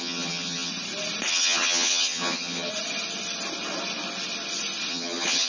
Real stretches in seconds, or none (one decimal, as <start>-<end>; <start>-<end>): 0.7-1.3; 2.7-4.9